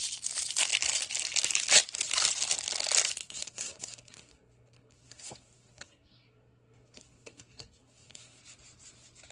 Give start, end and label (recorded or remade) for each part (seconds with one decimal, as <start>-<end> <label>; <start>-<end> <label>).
0.0-3.2 recorded; 3.2-8.4 remade; 8.4-9.3 recorded